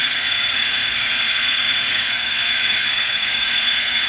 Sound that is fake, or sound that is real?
fake